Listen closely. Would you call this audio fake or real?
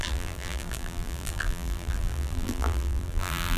fake